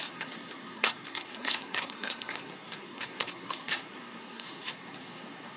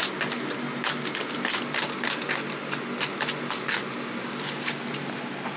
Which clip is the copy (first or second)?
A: first